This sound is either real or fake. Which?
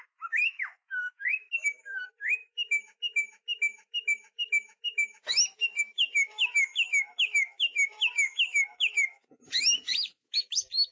fake